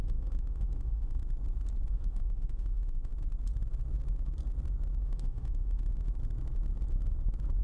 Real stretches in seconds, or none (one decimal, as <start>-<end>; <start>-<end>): 1.2-1.9; 3.1-5.0; 5.8-7.6